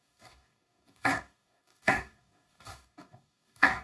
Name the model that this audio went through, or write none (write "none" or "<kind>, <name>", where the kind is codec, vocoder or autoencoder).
codec, DAC